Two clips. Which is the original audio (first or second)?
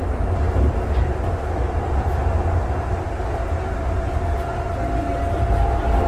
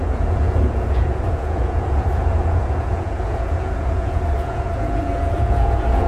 first